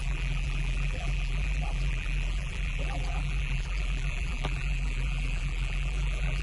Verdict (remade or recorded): remade